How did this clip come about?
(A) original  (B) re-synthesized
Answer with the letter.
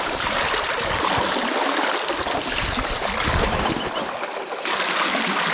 A